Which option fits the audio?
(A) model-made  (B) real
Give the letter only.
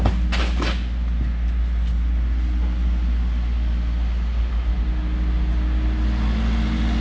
B